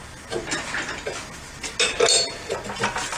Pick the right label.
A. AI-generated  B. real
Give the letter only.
B